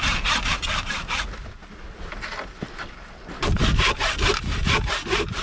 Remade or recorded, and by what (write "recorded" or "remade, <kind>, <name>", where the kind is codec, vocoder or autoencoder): recorded